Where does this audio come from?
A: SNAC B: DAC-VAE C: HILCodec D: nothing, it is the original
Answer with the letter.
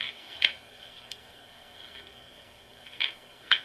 A